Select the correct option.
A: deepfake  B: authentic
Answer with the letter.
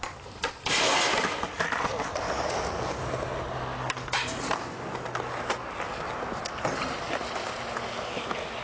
B